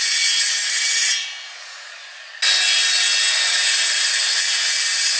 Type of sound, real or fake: real